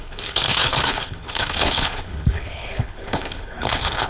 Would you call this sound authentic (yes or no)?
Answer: no